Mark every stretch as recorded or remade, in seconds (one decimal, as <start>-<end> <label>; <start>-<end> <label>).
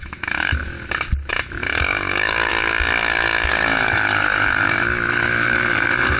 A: 0.0-0.6 remade; 0.6-1.3 recorded; 1.3-2.5 remade; 2.5-3.5 recorded; 3.5-6.2 remade